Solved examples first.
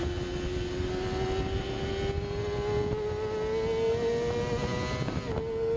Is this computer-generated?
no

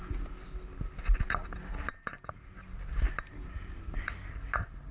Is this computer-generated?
no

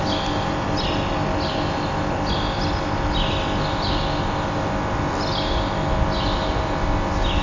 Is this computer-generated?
no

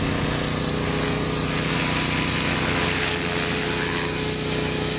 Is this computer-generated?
no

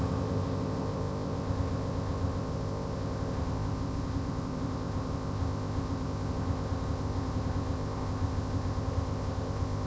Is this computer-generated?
yes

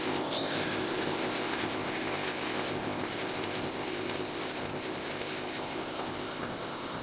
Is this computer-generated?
yes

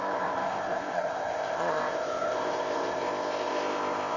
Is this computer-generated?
yes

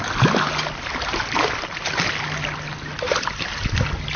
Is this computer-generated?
no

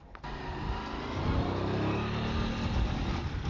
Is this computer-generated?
no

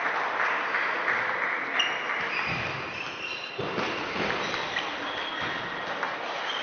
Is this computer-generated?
no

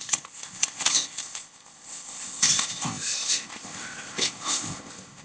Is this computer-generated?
yes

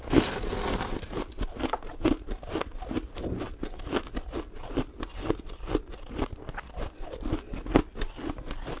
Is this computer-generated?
no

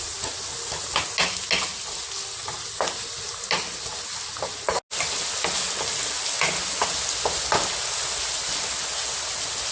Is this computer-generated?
no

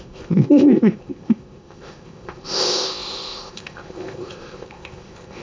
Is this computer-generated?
yes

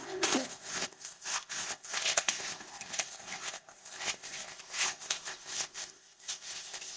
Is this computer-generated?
yes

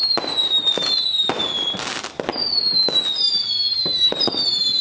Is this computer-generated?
no